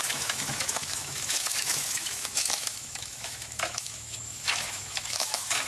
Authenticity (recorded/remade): remade